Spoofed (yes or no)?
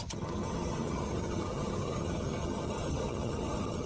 yes